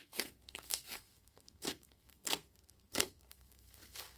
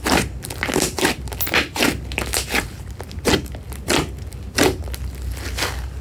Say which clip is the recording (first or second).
second